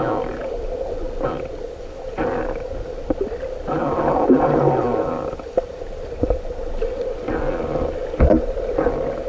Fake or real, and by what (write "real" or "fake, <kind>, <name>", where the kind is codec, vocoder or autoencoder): real